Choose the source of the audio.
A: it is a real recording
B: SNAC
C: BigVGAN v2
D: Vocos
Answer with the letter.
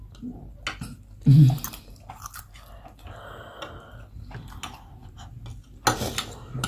A